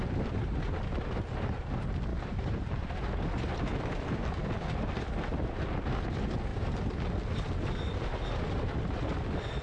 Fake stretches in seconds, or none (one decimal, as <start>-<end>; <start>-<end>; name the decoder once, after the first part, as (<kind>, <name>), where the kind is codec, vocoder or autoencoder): 2.1-3.8 (vocoder, BigVGAN v2)